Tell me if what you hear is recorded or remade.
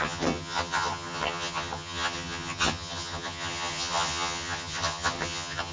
remade